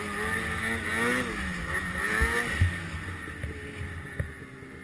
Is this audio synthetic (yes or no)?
no